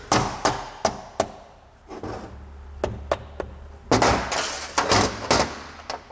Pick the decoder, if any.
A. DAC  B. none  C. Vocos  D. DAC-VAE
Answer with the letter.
B